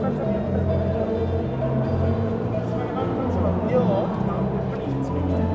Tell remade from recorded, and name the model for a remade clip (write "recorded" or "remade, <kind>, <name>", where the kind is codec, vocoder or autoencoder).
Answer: recorded